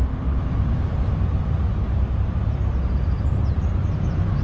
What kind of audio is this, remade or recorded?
recorded